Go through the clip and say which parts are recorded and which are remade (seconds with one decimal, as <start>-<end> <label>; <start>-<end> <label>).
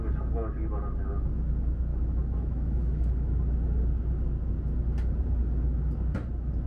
0.0-1.9 recorded; 1.9-3.1 remade; 3.1-6.7 recorded